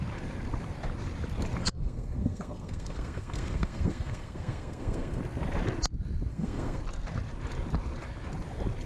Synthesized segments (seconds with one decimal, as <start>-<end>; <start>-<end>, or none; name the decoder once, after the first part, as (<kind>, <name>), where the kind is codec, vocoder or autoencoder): 1.6-5.2 (codec, SNAC); 6.3-6.8